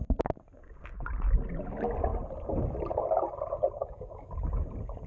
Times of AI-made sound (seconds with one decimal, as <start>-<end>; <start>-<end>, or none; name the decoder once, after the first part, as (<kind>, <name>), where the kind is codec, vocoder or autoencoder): 3.8-4.3 (autoencoder, DAC-VAE)